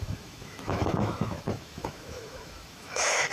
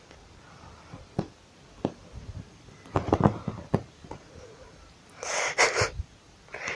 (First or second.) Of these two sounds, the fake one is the first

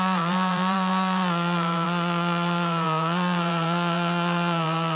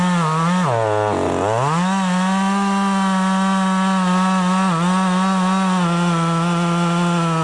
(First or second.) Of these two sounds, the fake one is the first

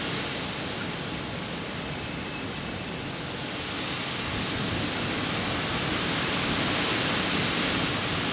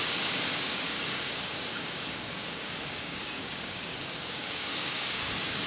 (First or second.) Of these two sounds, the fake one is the second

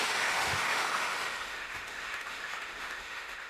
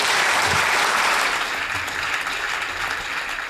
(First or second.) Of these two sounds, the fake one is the first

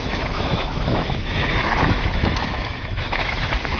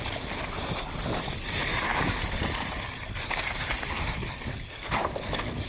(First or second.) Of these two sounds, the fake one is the first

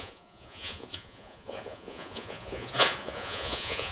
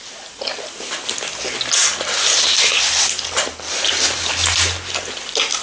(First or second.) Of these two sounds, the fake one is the first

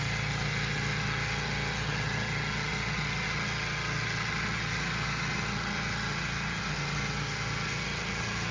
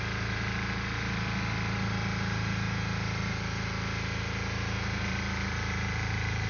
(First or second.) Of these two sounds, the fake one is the first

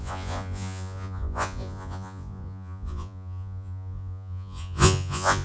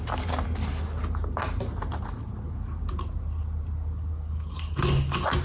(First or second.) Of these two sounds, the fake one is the first